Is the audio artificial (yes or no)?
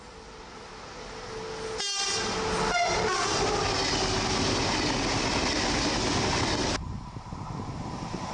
no